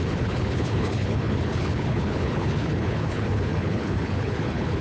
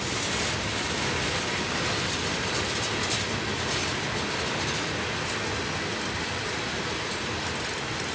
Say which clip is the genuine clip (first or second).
second